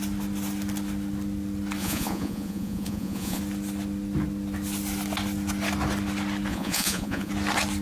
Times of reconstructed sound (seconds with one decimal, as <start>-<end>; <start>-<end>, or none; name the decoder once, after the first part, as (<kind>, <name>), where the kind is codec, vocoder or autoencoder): 1.8-3.4 (vocoder, Vocos); 6.5-7.3